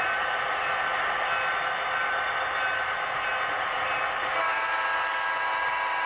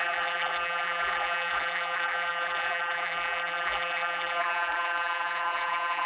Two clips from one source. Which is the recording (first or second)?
first